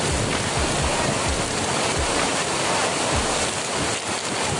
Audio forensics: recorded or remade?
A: recorded